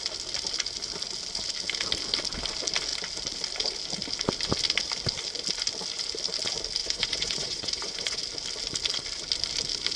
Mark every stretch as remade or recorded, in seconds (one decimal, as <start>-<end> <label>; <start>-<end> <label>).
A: 0.0-6.8 recorded; 6.8-8.2 remade; 8.2-10.0 recorded